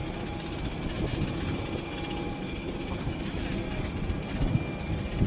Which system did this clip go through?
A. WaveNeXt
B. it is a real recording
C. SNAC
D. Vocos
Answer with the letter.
B